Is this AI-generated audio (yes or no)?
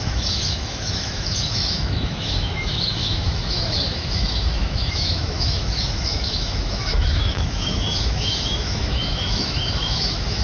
yes